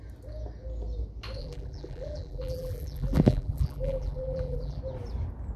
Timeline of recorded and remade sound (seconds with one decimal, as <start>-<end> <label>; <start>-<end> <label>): 0.0-1.4 recorded; 1.4-4.8 remade; 4.8-5.6 recorded